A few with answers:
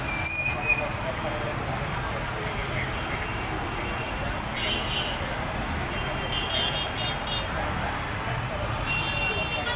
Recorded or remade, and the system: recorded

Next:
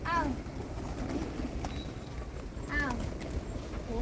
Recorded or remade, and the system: recorded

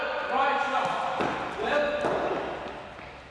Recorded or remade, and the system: recorded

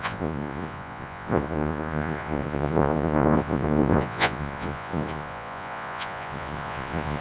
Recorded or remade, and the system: remade, vocoder, Vocos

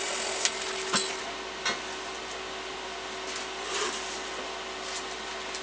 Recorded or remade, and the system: recorded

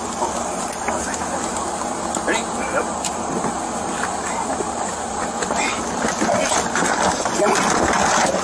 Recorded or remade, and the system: recorded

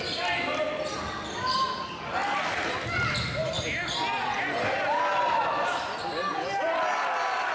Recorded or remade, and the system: recorded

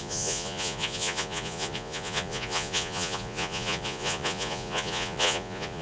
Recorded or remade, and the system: remade, vocoder, Vocos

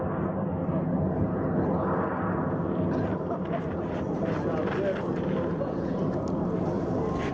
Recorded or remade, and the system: recorded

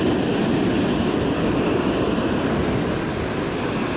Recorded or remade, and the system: recorded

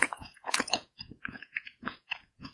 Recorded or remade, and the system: remade, vocoder, Vocos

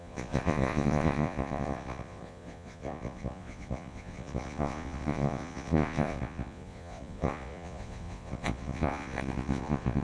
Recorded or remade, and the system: remade, vocoder, Vocos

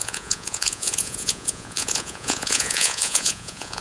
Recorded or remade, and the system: remade, vocoder, Vocos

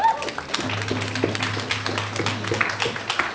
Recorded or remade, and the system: recorded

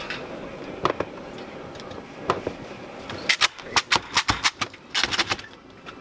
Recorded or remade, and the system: recorded